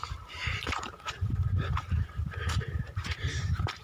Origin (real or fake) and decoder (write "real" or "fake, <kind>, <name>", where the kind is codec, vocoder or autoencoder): fake, vocoder, BigVGAN v2